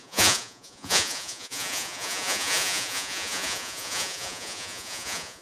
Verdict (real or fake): fake